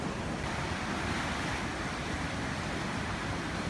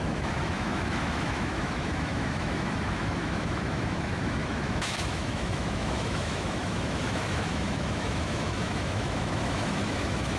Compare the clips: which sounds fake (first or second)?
second